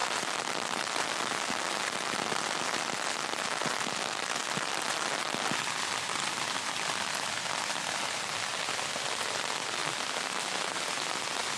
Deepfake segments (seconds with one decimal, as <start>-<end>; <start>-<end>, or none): none